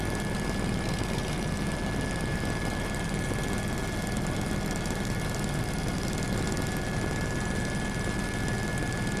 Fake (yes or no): no